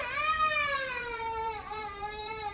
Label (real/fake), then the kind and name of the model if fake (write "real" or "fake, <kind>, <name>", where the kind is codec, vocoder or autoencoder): fake, vocoder, BigVGAN v2